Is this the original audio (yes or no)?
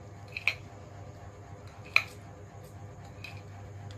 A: yes